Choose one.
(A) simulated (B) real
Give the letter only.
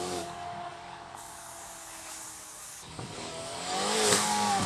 A